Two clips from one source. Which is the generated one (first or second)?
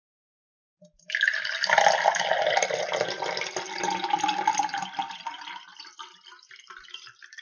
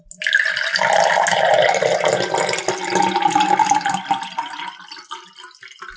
first